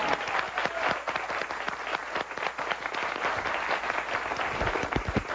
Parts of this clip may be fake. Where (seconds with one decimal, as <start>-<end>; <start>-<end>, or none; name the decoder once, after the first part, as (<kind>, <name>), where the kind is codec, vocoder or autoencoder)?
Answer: none